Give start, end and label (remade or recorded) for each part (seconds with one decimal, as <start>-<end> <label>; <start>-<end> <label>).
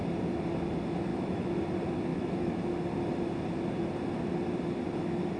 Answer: 0.0-1.1 recorded; 1.1-1.6 remade; 1.6-2.1 recorded; 2.1-2.6 remade; 2.6-5.4 recorded